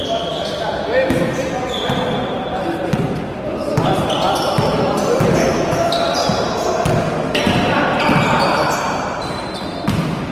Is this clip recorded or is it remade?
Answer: recorded